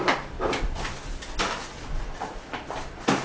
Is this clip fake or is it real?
real